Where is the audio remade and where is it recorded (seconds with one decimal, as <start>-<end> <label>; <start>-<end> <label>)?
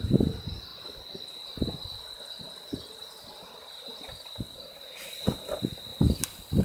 0.0-6.6 recorded